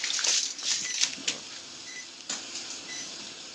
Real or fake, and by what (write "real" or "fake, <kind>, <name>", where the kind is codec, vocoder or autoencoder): fake, vocoder, BigVGAN v2